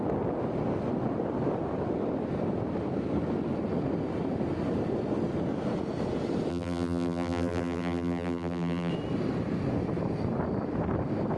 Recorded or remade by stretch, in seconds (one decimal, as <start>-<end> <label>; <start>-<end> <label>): 0.0-6.5 recorded; 6.5-8.9 remade; 8.9-11.4 recorded